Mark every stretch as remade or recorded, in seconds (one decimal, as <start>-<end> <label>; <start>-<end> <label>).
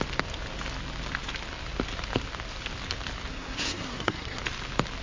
0.0-3.3 recorded; 3.3-4.4 remade; 4.4-5.0 recorded